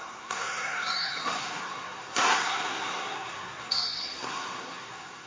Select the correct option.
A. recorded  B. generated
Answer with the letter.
B